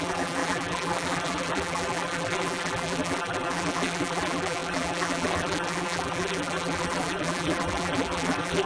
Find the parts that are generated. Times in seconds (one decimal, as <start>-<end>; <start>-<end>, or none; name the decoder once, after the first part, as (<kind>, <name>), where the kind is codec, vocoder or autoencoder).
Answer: 0.0-8.7 (vocoder, BigVGAN v2)